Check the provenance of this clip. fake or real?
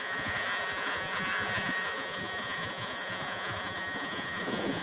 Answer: fake